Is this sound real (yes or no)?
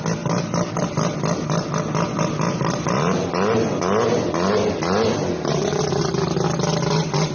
yes